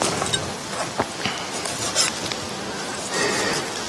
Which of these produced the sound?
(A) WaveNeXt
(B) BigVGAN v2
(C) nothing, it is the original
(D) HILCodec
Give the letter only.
C